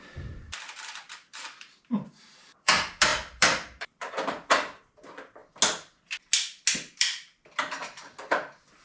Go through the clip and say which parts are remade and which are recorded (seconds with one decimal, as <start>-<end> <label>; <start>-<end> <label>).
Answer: 0.0-5.4 remade; 5.4-6.9 recorded; 6.9-8.8 remade